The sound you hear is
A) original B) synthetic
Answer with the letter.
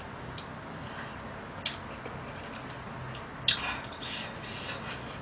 A